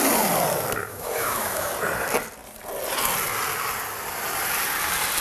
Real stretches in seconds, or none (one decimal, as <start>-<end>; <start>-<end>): 0.0-0.8; 1.7-5.2